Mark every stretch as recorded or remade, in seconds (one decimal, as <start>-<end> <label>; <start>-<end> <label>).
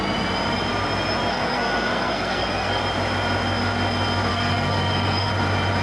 0.0-1.3 recorded; 1.3-2.8 remade; 2.8-4.3 recorded; 4.3-5.3 remade; 5.3-5.8 recorded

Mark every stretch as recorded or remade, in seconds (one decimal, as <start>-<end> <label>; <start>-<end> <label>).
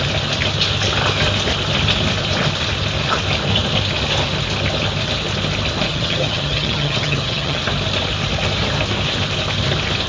0.0-5.9 recorded; 5.9-7.6 remade; 7.6-10.1 recorded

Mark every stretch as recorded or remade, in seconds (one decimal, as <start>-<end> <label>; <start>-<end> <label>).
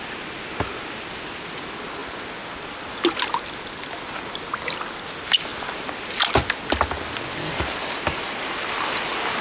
0.0-9.4 recorded